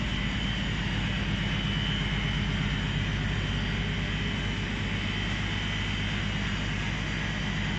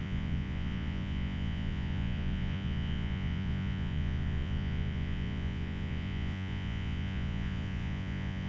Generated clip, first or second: second